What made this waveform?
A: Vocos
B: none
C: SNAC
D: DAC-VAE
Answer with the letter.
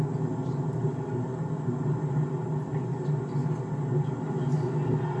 B